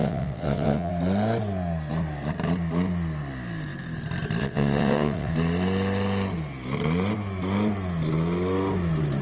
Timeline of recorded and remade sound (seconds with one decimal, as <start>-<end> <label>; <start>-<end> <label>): 0.0-0.9 remade; 0.9-4.4 recorded; 4.4-5.3 remade; 5.3-9.2 recorded